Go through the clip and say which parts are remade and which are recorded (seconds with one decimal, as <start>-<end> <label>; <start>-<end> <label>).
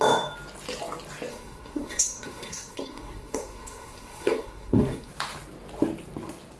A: 0.0-1.3 recorded; 1.3-5.1 remade; 5.1-6.6 recorded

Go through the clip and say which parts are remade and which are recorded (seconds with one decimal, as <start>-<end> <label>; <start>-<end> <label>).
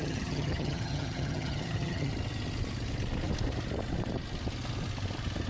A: 0.0-2.1 remade; 2.1-5.5 recorded